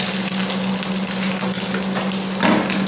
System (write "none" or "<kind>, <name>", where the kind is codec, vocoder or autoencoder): none